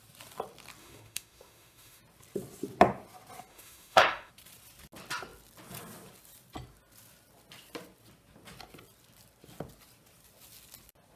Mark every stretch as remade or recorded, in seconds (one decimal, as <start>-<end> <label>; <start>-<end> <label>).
0.0-0.8 recorded; 0.8-2.0 remade; 2.0-3.5 recorded; 3.5-4.3 remade; 4.3-11.2 recorded